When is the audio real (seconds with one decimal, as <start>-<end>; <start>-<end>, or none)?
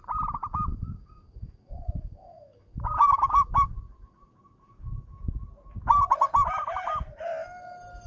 0.0-0.7; 5.2-8.1